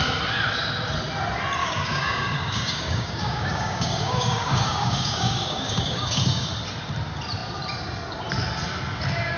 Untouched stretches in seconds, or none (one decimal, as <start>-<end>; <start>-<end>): 0.0-1.6; 6.5-9.4